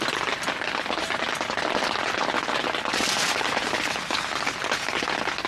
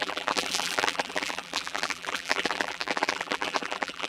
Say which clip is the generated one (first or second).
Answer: second